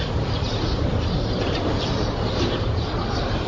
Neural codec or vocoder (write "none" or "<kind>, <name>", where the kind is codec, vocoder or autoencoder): vocoder, BigVGAN v2